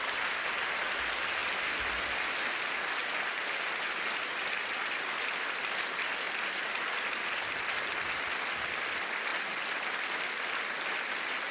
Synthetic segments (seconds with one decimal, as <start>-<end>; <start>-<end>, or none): none